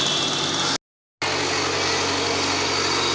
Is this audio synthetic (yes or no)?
no